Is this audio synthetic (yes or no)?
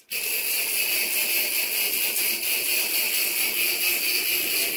no